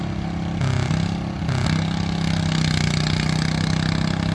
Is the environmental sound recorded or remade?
recorded